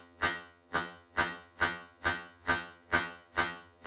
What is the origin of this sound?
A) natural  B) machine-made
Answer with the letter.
B